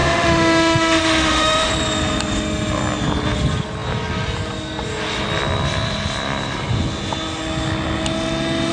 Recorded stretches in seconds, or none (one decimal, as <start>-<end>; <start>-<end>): 1.7-8.7